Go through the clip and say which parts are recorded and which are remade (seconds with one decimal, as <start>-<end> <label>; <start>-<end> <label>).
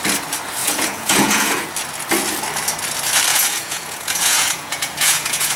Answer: 0.0-0.6 recorded; 0.6-1.7 remade; 1.7-3.3 recorded; 3.3-5.6 remade